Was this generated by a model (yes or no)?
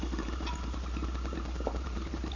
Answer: yes